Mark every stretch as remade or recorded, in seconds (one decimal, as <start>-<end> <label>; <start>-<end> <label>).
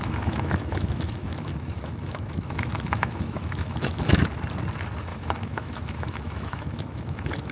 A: 0.0-4.3 remade; 4.3-5.1 recorded; 5.1-7.5 remade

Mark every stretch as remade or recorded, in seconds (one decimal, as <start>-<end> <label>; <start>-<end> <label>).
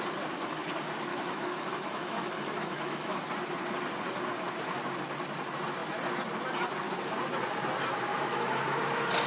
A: 0.0-1.1 recorded; 1.1-3.2 remade; 3.2-8.1 recorded; 8.1-8.6 remade; 8.6-9.3 recorded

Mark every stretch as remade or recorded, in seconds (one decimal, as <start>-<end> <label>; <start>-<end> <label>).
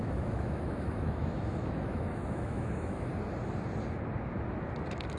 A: 0.0-3.1 remade; 3.1-5.2 recorded